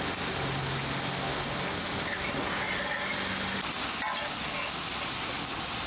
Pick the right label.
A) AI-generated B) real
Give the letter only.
B